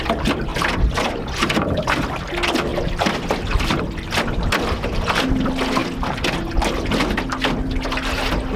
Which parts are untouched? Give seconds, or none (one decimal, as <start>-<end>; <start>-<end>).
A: 0.0-0.5; 1.8-2.7; 3.8-8.6